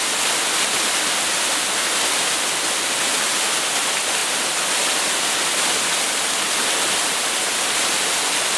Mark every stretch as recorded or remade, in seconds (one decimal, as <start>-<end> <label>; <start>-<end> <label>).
0.0-8.6 recorded